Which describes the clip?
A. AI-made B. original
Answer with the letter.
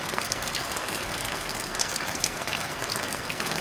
A